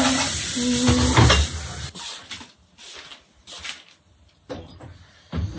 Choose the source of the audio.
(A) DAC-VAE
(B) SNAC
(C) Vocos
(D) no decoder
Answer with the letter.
D